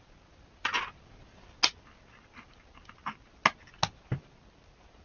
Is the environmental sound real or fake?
real